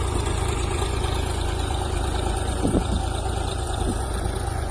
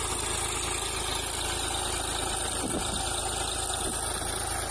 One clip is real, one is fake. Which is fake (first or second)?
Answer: first